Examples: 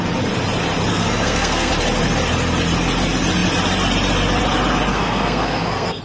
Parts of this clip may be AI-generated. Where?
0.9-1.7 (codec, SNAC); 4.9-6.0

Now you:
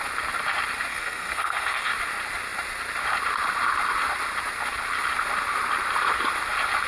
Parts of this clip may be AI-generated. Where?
0.9-1.9 (codec, SNAC)

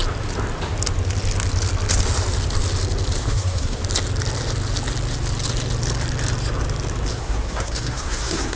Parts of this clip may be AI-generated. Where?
3.2-3.8 (codec, SNAC); 7.1-8.6